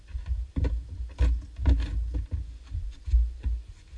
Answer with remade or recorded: recorded